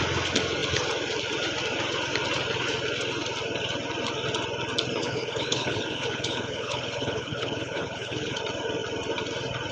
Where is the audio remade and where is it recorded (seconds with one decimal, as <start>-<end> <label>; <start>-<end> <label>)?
0.0-5.0 recorded; 5.0-8.4 remade; 8.4-9.7 recorded